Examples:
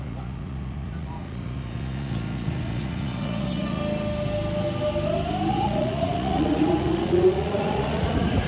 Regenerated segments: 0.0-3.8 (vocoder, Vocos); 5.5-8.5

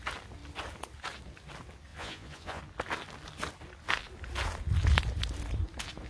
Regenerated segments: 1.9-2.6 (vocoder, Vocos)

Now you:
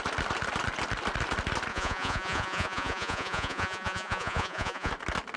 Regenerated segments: 1.7-4.9 (vocoder, Vocos)

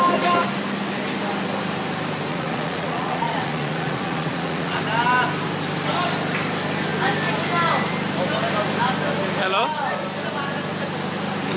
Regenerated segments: 2.3-4.8 (vocoder, Vocos)

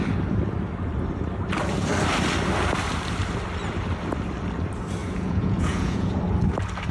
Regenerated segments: 5.0-6.2 (vocoder, Vocos)

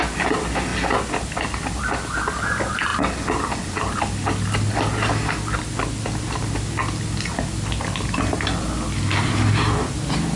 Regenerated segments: none

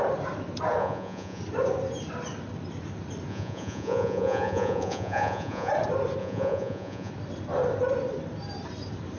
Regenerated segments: 0.8-1.4 (vocoder, Vocos); 3.3-5.7; 6.2-7.1